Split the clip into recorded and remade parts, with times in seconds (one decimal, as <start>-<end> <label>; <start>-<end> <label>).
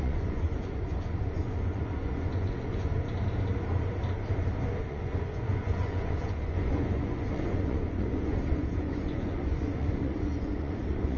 0.0-2.9 remade; 2.9-4.8 recorded; 4.8-11.2 remade